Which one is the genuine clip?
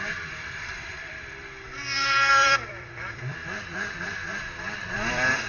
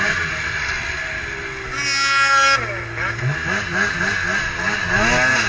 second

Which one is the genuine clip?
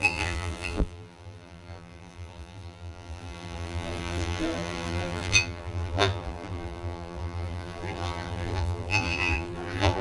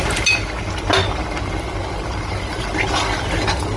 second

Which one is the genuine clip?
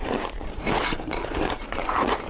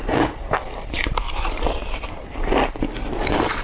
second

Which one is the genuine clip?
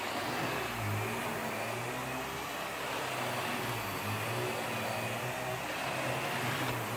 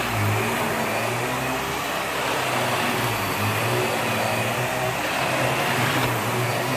first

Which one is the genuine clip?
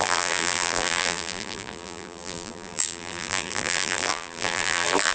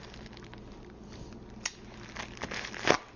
second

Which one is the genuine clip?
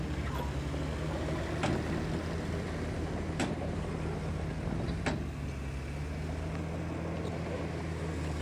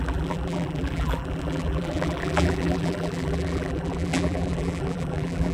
first